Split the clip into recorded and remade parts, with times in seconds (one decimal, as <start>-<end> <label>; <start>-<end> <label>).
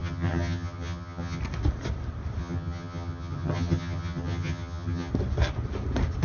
0.0-1.4 remade; 1.4-2.4 recorded; 2.4-5.1 remade; 5.1-6.2 recorded